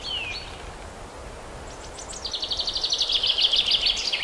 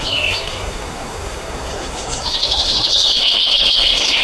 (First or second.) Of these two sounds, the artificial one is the second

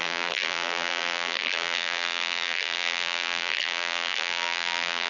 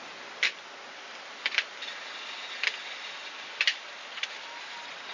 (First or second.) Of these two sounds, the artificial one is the first